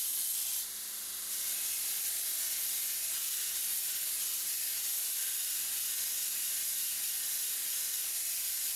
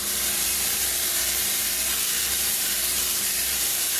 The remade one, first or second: second